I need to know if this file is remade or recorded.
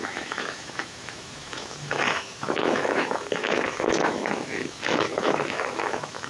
remade